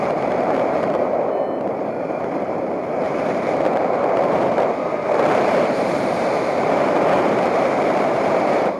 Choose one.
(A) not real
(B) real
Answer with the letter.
A